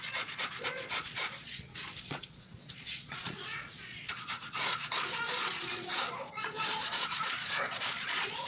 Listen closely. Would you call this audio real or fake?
fake